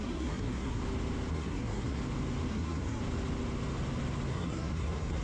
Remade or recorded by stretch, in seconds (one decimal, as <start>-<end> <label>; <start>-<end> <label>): 0.0-0.8 remade; 0.8-1.3 recorded; 1.3-2.0 remade; 2.0-2.5 recorded; 2.5-3.0 remade; 3.0-4.3 recorded; 4.3-5.2 remade

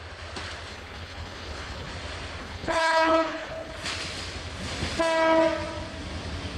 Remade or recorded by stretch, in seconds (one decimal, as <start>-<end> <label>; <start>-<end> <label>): 0.0-0.7 recorded; 0.7-1.9 remade; 1.9-2.4 recorded; 2.4-3.7 remade; 3.7-6.6 recorded

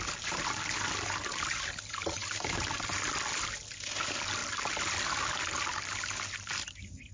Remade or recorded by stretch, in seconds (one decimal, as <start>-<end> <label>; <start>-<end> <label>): 0.0-7.1 recorded

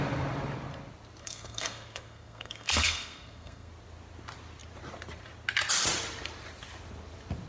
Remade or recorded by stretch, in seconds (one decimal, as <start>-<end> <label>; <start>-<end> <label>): 0.0-1.2 recorded; 1.2-3.7 remade; 3.7-7.5 recorded

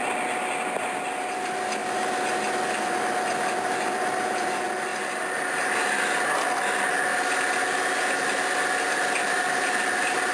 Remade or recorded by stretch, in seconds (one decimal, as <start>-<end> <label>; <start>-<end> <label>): 0.0-0.6 remade; 0.6-10.3 recorded

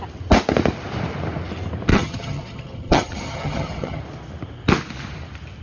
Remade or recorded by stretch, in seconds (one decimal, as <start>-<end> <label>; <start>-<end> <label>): 0.0-1.9 recorded; 1.9-4.0 remade; 4.0-5.6 recorded